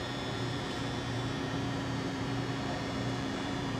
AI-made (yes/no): yes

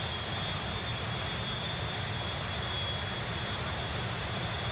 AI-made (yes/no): no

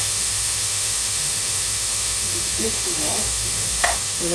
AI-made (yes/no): yes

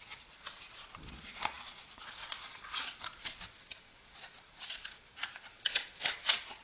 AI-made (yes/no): yes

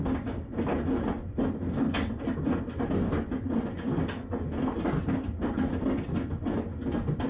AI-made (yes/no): no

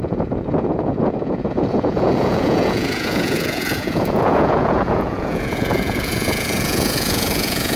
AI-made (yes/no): yes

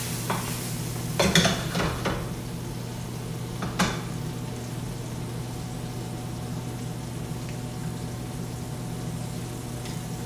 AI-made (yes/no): no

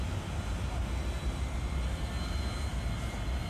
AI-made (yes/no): no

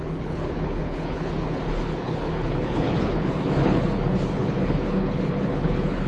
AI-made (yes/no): yes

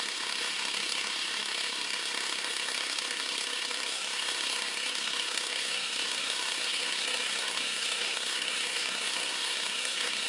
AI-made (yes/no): yes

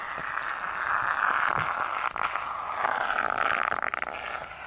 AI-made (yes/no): no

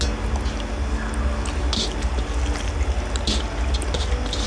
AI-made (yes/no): no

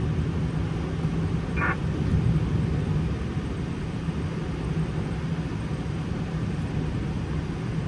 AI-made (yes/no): no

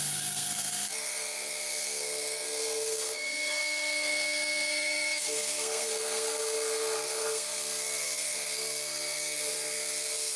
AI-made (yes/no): yes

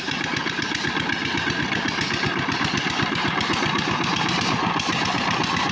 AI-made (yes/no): yes